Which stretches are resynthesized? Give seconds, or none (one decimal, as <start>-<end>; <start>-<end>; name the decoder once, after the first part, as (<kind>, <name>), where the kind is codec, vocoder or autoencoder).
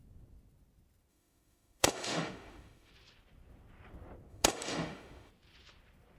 1.1-2.9 (autoencoder, DAC-VAE); 4.3-5.3